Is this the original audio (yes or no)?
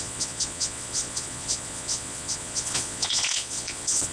no